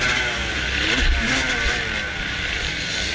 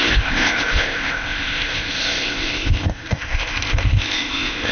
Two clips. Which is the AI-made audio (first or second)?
second